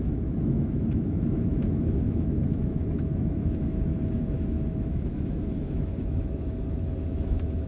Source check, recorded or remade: remade